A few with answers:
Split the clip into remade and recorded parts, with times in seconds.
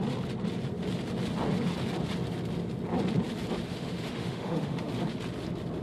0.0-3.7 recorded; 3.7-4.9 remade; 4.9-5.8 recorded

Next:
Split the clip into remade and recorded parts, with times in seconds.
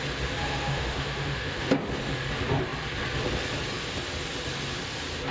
0.0-0.4 recorded; 0.4-1.7 remade; 1.7-5.3 recorded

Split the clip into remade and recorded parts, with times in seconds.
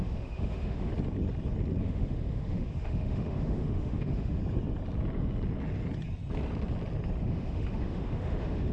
0.0-0.9 remade; 0.9-1.8 recorded; 1.8-4.4 remade; 4.4-7.2 recorded; 7.2-8.7 remade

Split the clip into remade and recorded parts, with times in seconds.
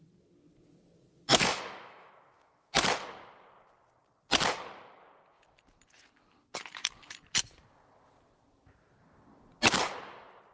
0.0-1.3 recorded; 1.3-2.8 remade; 2.8-10.5 recorded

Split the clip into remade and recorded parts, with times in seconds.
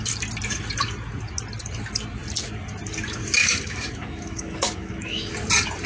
0.0-3.4 recorded; 3.4-5.3 remade; 5.3-5.9 recorded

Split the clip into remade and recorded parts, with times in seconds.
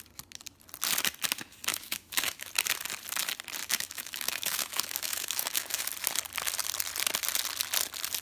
0.0-1.7 recorded; 1.7-2.5 remade; 2.5-3.6 recorded; 3.6-5.8 remade; 5.8-8.2 recorded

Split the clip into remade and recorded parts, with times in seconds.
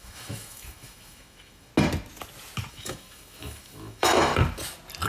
0.0-1.7 remade; 1.7-2.7 recorded; 2.7-4.3 remade; 4.3-5.1 recorded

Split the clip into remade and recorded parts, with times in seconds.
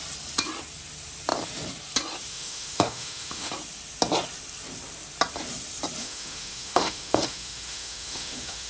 0.0-2.3 recorded; 2.3-3.5 remade; 3.5-6.0 recorded; 6.0-8.7 remade